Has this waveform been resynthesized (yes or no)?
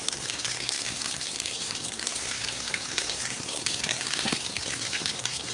yes